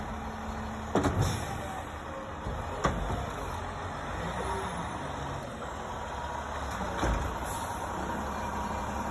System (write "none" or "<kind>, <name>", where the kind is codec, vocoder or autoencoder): none